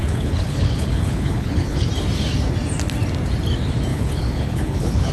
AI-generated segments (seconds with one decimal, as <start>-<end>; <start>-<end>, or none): 0.0-1.9; 3.9-5.1